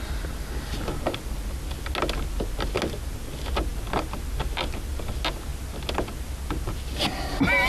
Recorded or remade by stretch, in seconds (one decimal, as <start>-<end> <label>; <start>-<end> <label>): 0.0-7.7 recorded